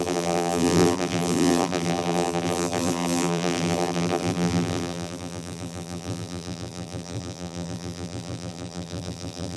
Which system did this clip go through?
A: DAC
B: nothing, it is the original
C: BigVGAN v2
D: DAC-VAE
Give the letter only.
C